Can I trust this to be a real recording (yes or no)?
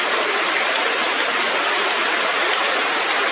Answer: yes